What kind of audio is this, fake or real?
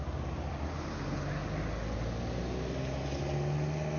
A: real